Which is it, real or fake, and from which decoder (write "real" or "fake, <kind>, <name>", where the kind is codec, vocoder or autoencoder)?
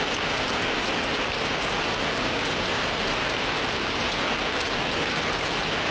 real